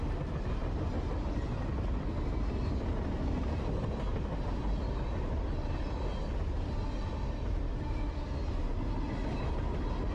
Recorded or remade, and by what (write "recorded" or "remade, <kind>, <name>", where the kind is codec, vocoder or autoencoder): recorded